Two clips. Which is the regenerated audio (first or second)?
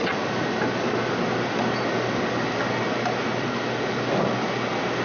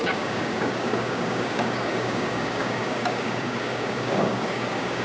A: second